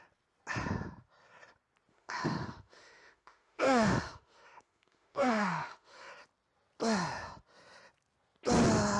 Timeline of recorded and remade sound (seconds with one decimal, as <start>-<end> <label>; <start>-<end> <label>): 0.0-1.9 recorded; 1.9-6.1 remade; 6.1-9.0 recorded